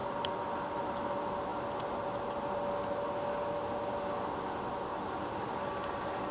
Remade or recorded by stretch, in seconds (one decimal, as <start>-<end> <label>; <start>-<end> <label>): 0.0-6.3 recorded